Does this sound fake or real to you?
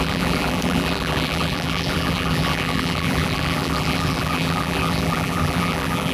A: fake